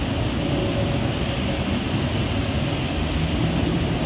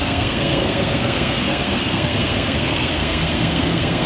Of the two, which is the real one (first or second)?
first